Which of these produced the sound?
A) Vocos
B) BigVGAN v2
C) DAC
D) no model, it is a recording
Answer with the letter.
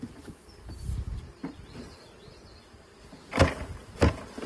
D